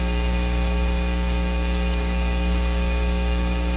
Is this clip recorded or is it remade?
remade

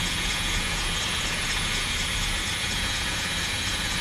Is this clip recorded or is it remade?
remade